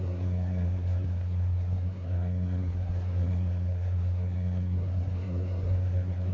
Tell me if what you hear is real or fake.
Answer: fake